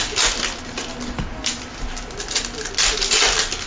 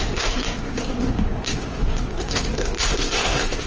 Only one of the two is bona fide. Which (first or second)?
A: first